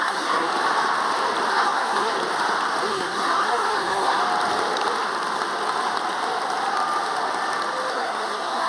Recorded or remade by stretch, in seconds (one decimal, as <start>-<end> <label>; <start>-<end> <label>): 0.0-0.5 remade; 0.5-1.5 recorded; 1.5-2.1 remade; 2.1-2.9 recorded; 2.9-4.2 remade; 4.2-7.9 recorded; 7.9-8.7 remade